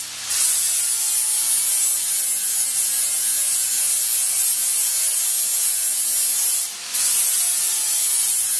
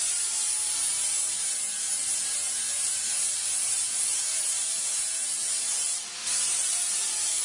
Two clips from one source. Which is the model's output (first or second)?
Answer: second